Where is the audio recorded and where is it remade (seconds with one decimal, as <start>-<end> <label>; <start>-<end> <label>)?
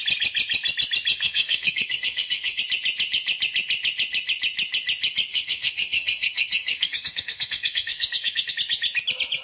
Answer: 0.0-1.1 recorded; 1.1-2.6 remade; 2.6-5.3 recorded; 5.3-8.5 remade; 8.5-9.4 recorded